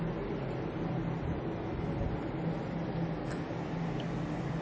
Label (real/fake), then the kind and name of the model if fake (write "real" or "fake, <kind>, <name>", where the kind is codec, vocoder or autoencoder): real